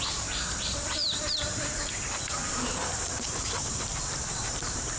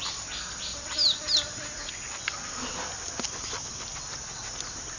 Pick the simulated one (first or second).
first